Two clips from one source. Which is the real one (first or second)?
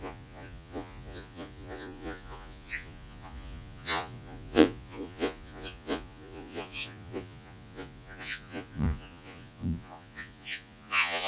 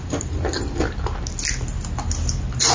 second